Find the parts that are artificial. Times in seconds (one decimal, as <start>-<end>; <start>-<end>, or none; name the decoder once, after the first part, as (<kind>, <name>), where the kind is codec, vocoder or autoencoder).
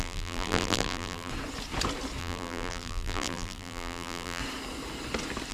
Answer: 0.0-1.3 (vocoder, BigVGAN v2); 2.2-4.4